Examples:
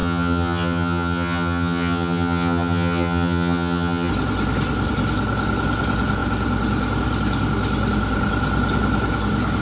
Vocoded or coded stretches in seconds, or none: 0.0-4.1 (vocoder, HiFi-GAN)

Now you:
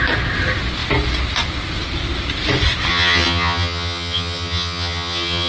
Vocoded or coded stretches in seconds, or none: 2.9-5.5 (vocoder, HiFi-GAN)

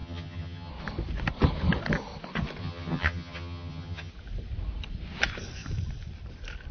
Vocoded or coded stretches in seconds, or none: 0.0-0.7 (vocoder, HiFi-GAN); 2.6-4.1

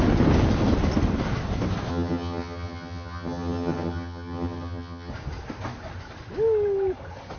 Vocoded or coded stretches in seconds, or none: 1.9-5.1 (vocoder, HiFi-GAN)

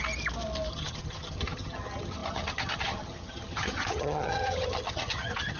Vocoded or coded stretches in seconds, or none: 0.7-5.6 (vocoder, HiFi-GAN)